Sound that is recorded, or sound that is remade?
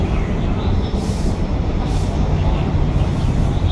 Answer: recorded